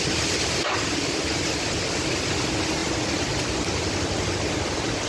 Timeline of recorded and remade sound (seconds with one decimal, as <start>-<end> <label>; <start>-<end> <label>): 0.0-5.1 recorded